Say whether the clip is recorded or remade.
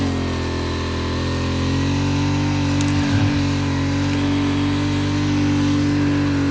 recorded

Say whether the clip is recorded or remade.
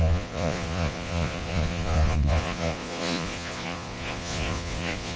remade